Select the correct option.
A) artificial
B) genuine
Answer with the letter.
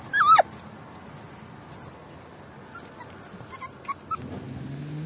B